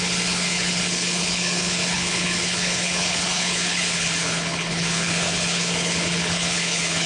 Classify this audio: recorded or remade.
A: remade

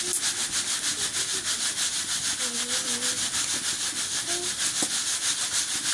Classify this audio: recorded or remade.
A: recorded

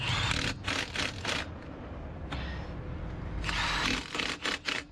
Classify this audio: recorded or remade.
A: recorded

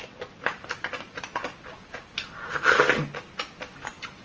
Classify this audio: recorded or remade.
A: recorded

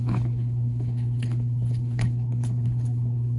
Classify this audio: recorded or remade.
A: remade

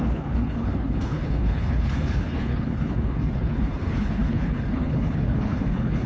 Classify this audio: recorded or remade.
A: remade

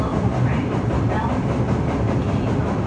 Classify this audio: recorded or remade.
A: recorded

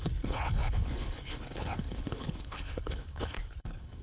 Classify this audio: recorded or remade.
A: remade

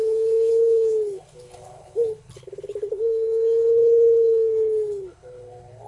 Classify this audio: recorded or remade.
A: remade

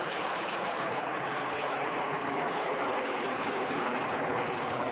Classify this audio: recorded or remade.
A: remade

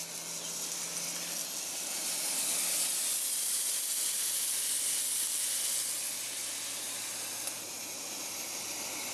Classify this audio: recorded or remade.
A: recorded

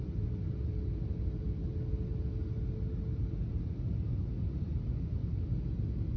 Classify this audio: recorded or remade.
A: recorded